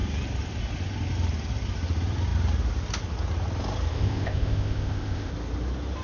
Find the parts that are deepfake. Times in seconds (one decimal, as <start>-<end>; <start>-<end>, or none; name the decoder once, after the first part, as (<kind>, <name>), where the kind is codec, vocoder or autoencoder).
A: 3.9-5.3 (codec, ZipCodec)